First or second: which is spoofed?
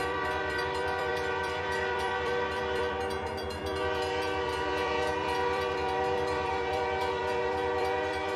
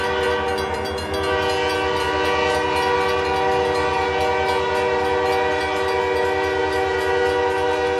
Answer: first